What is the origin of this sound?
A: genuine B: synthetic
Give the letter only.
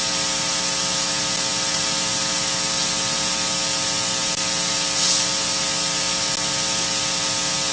A